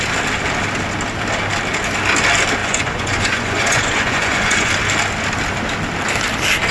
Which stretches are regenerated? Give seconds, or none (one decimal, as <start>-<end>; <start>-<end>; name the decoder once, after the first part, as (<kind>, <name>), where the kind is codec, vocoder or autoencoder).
2.6-4.7 (vocoder, Vocos)